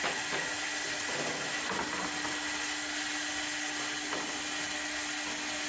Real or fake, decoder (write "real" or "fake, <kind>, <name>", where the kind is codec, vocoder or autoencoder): real